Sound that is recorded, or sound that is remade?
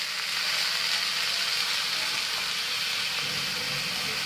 recorded